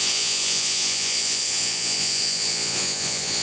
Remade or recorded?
remade